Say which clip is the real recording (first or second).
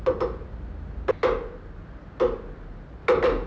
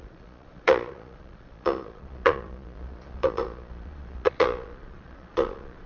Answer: first